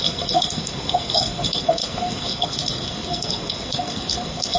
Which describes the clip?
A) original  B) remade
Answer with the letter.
B